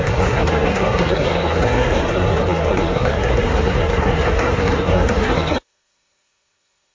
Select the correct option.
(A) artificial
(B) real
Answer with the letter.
A